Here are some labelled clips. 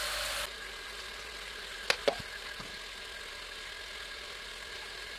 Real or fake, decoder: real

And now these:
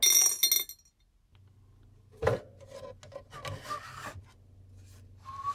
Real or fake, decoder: real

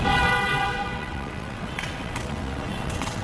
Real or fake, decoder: fake, vocoder, WaveNeXt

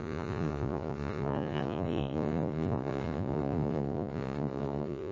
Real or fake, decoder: fake, vocoder, Vocos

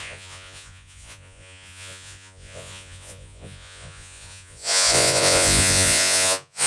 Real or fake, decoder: fake, vocoder, Vocos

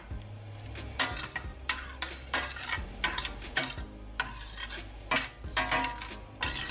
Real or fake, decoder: real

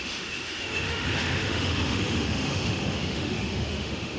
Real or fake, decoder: fake, autoencoder, DAC-VAE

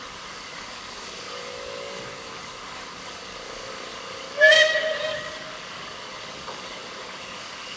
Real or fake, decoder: fake, codec, DAC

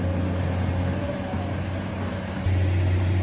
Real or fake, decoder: real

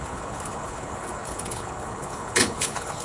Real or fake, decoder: fake, codec, HILCodec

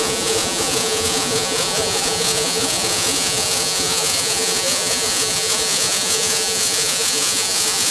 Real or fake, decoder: fake, vocoder, Vocos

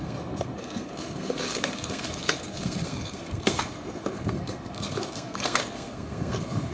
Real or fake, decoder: fake, codec, SNAC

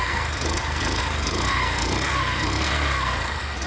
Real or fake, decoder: fake, codec, SNAC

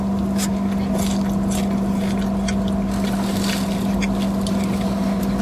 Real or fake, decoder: real